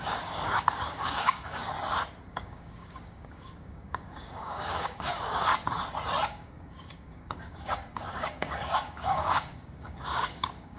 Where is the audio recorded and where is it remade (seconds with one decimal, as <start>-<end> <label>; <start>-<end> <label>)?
0.0-1.7 remade; 1.7-2.3 recorded; 2.3-5.5 remade; 5.5-6.3 recorded; 6.3-10.8 remade